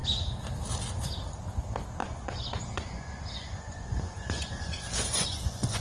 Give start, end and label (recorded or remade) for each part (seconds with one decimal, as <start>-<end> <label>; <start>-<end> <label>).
0.0-2.0 recorded; 2.0-5.8 remade